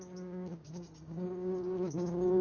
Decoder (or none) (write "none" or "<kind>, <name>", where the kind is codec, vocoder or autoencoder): codec, DAC